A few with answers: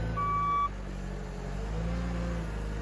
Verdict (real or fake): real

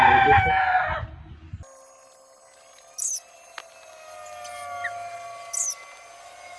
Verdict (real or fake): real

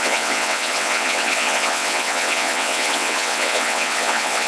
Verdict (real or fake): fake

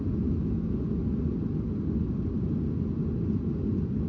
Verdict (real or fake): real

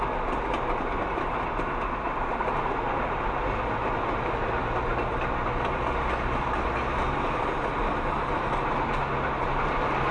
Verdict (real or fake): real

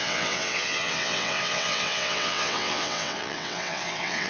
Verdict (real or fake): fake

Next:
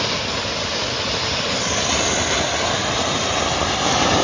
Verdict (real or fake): real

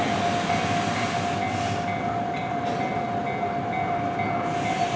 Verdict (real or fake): real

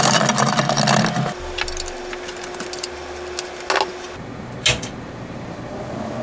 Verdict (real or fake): real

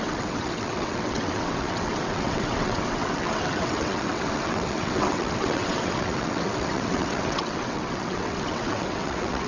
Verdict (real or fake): fake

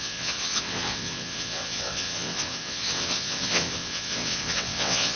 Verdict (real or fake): fake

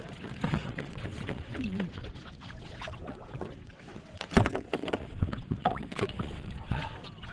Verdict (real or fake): fake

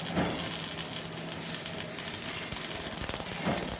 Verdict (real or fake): real